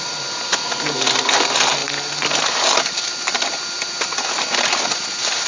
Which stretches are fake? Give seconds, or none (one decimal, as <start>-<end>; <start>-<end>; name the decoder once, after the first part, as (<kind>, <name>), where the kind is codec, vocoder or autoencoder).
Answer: none